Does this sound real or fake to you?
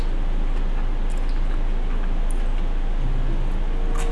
real